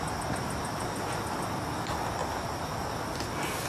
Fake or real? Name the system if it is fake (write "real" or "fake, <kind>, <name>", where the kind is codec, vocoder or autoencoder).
real